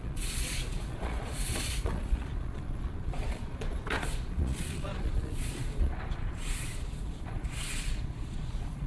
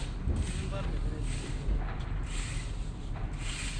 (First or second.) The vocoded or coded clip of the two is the first